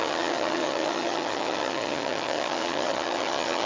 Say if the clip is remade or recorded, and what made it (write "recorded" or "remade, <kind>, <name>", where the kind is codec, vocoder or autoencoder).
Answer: remade, vocoder, HiFi-GAN